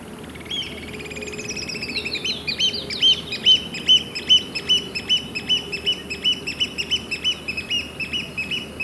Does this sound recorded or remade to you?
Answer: recorded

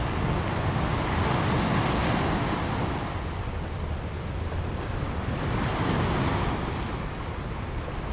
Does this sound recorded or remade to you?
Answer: recorded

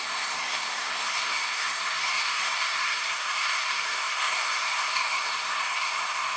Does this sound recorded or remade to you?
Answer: remade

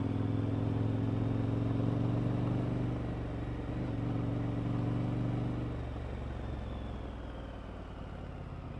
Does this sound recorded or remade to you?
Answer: recorded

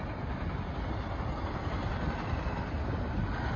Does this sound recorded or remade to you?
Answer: recorded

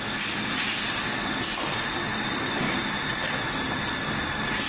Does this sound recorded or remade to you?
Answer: recorded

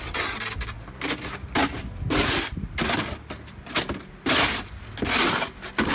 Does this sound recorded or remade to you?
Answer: recorded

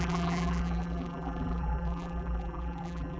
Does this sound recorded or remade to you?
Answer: remade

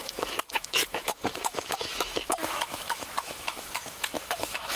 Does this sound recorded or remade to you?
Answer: remade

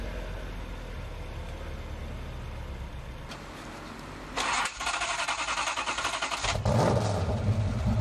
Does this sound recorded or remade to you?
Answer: recorded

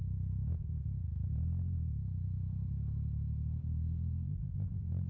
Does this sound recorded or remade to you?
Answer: remade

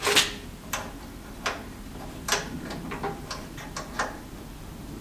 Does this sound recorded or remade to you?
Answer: remade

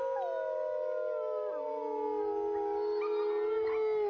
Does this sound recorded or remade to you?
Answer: recorded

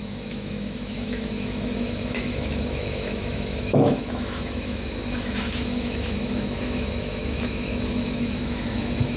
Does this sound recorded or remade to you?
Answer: remade